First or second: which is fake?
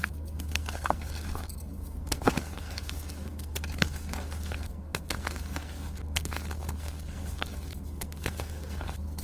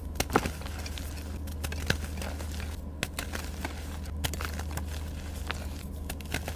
first